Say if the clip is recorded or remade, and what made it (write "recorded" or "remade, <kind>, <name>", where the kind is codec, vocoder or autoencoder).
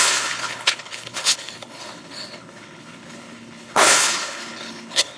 remade, codec, HILCodec